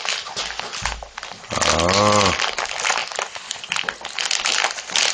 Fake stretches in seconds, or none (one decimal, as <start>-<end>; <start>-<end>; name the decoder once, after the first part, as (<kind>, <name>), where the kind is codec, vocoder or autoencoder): none